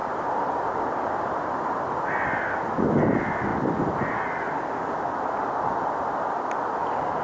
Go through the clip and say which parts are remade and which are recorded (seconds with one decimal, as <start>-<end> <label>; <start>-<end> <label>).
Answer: 0.0-7.2 recorded